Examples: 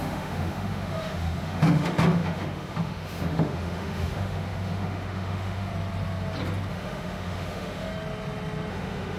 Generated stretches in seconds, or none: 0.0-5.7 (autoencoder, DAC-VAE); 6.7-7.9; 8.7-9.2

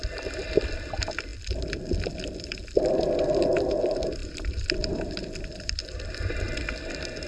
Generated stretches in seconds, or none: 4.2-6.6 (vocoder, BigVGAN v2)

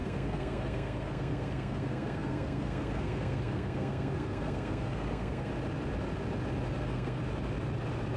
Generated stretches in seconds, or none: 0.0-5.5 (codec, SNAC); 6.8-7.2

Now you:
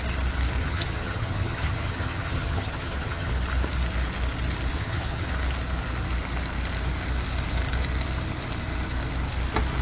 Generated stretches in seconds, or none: 0.6-3.3 (vocoder, HiFi-GAN); 4.7-5.3

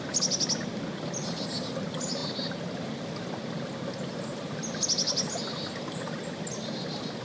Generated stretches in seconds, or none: none